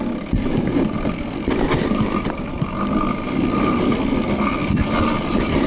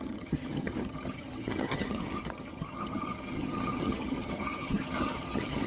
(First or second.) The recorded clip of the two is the first